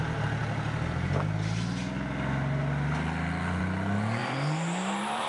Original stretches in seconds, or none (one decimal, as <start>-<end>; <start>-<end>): 0.0-4.2